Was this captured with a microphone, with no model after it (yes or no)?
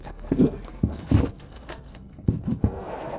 no